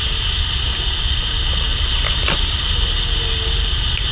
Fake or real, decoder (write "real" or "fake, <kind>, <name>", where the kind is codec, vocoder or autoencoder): real